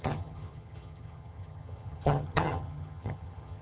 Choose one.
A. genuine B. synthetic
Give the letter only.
B